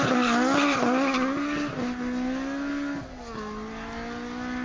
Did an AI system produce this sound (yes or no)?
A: no